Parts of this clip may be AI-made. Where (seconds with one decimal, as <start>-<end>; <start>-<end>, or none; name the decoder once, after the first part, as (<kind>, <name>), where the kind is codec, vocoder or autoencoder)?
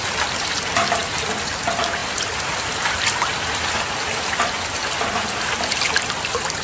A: none